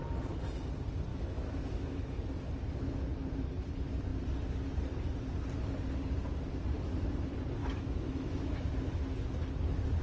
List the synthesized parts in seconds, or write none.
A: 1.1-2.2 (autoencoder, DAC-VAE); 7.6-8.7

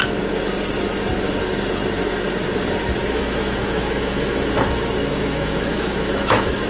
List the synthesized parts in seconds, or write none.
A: 3.0-6.7 (autoencoder, DAC-VAE)

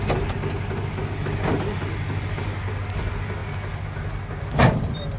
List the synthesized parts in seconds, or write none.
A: none